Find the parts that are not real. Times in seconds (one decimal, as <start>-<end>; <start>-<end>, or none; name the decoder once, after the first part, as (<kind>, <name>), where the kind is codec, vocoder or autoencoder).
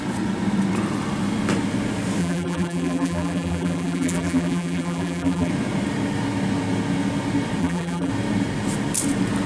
2.2-5.5 (vocoder, BigVGAN v2); 7.6-8.1